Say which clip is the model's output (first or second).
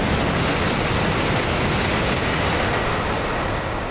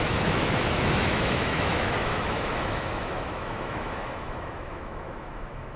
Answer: second